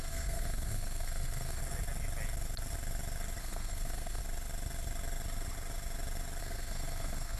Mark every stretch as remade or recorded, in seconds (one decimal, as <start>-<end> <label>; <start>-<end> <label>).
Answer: 0.0-1.6 remade; 1.6-3.4 recorded; 3.4-4.2 remade; 4.2-6.4 recorded; 6.4-7.4 remade